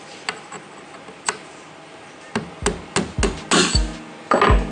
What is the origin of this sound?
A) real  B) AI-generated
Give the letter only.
A